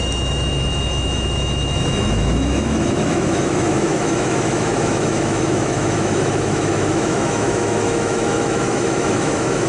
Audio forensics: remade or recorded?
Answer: remade